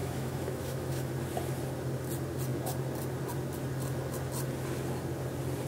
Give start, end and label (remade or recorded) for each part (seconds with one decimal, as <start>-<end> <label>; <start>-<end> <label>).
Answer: 0.0-1.1 remade; 1.1-5.7 recorded